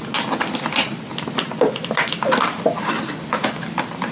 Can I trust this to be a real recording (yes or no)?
yes